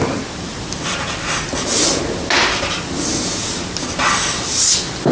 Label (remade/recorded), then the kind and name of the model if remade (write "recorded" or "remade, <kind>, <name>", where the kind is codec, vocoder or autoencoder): recorded